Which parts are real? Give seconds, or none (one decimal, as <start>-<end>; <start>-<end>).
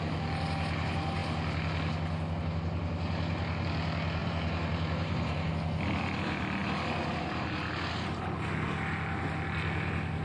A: 0.0-4.2; 5.5-10.2